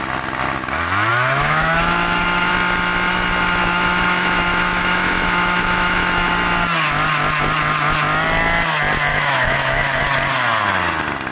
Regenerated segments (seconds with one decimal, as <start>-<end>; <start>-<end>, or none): 1.1-2.5; 3.6-6.3; 9.1-10.0